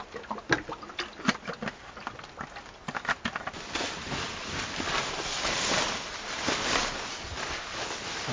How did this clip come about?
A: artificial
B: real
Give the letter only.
B